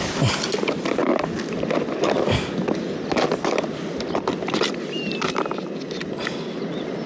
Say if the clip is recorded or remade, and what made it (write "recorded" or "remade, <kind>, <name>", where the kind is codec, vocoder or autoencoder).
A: recorded